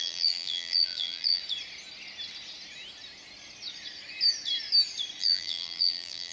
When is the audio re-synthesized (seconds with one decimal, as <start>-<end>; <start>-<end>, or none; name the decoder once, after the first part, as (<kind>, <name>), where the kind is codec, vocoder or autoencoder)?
0.0-1.4 (vocoder, BigVGAN v2); 5.2-6.3